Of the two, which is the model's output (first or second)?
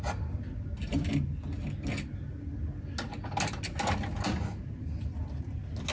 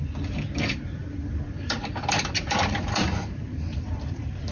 second